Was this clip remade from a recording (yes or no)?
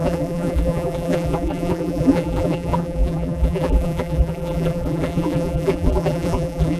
yes